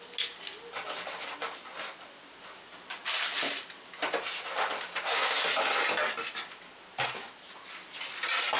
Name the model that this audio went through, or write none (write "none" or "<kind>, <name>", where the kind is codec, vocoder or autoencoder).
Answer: none